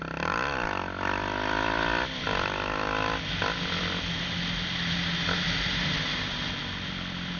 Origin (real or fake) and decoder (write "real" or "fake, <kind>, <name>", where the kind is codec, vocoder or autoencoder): real